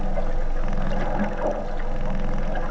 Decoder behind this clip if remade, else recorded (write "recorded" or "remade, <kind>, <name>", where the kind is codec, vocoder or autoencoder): recorded